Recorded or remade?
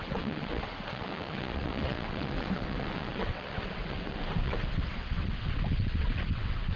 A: remade